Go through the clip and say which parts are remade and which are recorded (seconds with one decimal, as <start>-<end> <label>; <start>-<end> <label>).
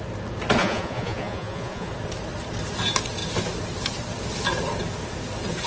0.0-0.6 recorded; 0.6-1.9 remade; 1.9-5.7 recorded